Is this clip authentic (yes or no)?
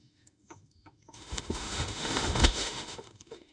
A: no